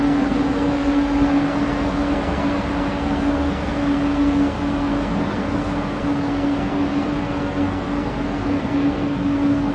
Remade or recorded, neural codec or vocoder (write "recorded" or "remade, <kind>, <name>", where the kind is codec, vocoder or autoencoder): remade, codec, SNAC